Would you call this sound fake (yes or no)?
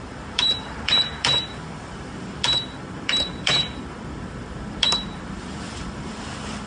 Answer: yes